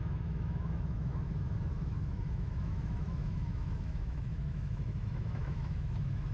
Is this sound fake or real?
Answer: fake